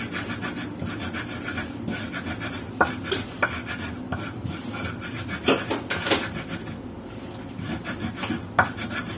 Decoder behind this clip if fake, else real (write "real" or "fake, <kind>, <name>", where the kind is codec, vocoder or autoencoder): real